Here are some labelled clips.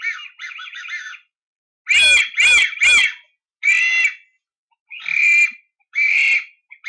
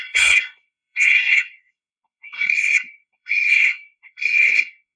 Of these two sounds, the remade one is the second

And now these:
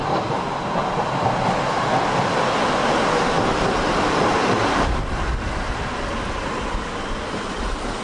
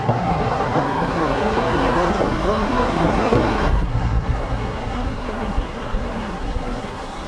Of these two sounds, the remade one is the second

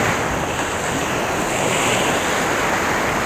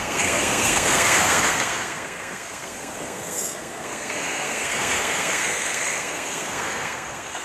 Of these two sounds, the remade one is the second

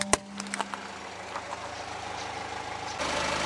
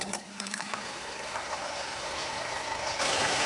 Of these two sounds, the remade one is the second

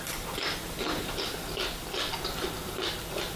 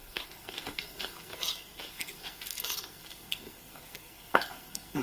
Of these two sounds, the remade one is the second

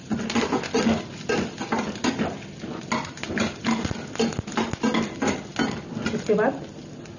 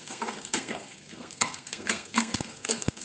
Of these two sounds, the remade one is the second